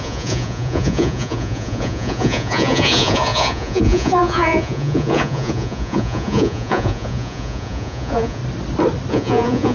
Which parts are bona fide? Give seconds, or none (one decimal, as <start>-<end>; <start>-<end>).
8.4-9.1